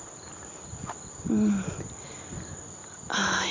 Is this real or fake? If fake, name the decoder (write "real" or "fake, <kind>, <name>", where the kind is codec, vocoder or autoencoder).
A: real